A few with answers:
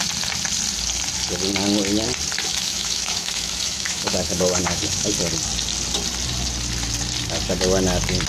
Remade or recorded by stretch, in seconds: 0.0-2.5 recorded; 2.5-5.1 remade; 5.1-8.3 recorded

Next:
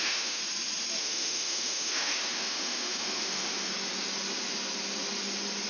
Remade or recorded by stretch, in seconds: 0.0-0.4 remade; 0.4-1.0 recorded; 1.0-3.7 remade; 3.7-5.7 recorded

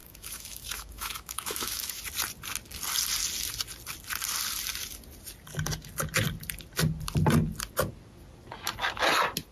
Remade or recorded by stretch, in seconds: 0.0-2.0 remade; 2.0-9.5 recorded

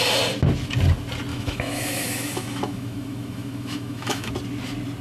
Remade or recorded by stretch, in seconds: 0.0-1.3 recorded; 1.3-4.3 remade; 4.3-5.0 recorded

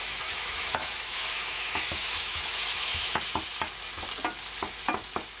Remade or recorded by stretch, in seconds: 0.0-3.2 remade; 3.2-5.4 recorded

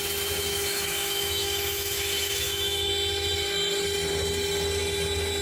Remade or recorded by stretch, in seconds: 0.0-0.5 recorded; 0.5-2.9 remade; 2.9-5.4 recorded

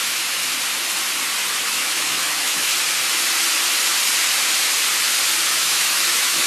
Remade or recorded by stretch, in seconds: 0.0-0.4 remade; 0.4-1.7 recorded; 1.7-2.7 remade; 2.7-5.5 recorded; 5.5-6.5 remade

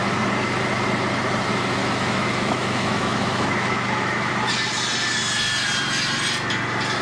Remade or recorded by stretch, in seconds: 0.0-1.8 recorded; 1.8-4.5 remade; 4.5-7.0 recorded